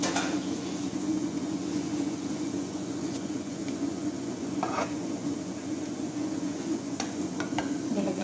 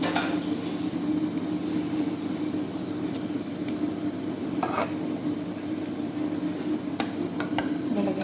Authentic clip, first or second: second